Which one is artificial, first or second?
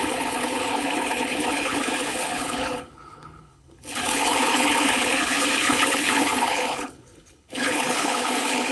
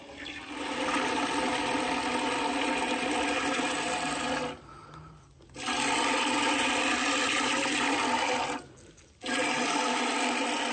first